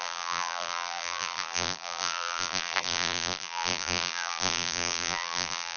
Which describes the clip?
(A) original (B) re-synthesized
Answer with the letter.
B